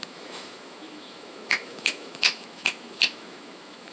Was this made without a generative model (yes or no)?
no